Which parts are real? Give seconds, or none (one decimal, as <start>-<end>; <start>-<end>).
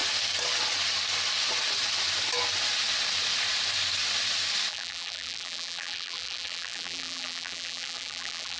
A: 0.0-4.7